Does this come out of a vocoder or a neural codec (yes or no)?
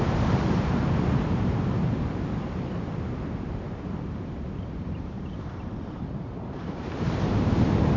yes